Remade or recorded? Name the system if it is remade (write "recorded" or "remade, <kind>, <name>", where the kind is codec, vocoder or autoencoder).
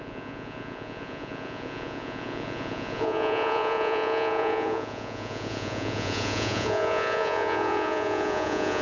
remade, vocoder, Vocos